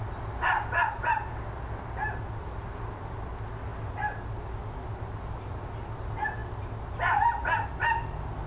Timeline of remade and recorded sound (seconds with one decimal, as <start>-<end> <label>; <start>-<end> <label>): 0.0-8.5 recorded